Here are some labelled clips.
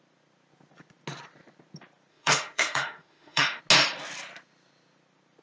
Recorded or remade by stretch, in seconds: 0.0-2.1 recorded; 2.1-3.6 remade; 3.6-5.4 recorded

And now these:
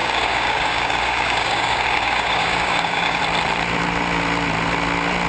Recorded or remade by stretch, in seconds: 0.0-3.2 remade; 3.2-5.3 recorded

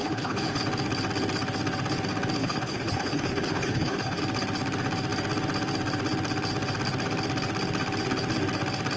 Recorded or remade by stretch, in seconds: 0.0-0.6 remade; 0.6-2.4 recorded; 2.4-4.2 remade; 4.2-9.0 recorded

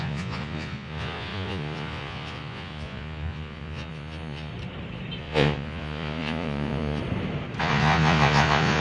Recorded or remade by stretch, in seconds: 0.0-4.5 remade; 4.5-5.2 recorded; 5.2-7.0 remade; 7.0-7.6 recorded; 7.6-8.8 remade

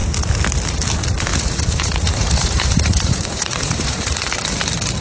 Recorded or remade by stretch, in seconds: 0.0-1.3 recorded; 1.3-4.3 remade; 4.3-5.0 recorded